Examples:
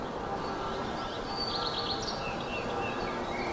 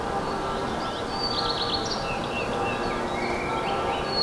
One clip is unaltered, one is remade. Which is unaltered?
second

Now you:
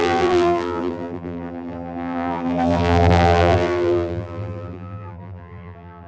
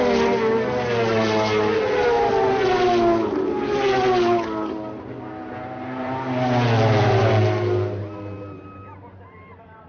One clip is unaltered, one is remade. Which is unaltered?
second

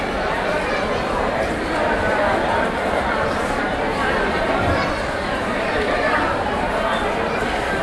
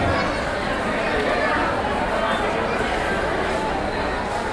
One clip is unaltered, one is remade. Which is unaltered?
second